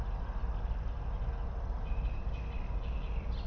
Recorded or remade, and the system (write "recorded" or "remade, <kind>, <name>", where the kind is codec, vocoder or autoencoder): recorded